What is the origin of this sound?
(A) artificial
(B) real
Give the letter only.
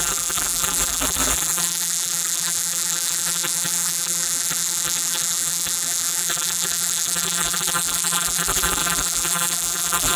A